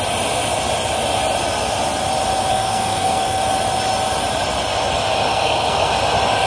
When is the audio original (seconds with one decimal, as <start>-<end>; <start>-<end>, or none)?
0.0-2.5; 3.4-5.3; 5.9-6.5